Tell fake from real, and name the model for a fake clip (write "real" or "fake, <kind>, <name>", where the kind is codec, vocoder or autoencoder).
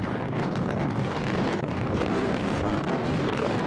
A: fake, codec, DAC